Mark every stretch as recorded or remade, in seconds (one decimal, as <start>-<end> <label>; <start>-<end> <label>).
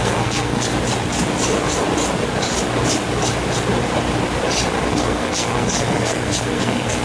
0.0-0.7 remade; 0.7-4.9 recorded; 4.9-7.0 remade